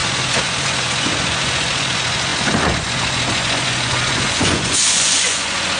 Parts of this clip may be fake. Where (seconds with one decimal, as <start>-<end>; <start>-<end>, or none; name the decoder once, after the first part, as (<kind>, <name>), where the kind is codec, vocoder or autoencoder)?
0.0-5.8 (vocoder, Vocos)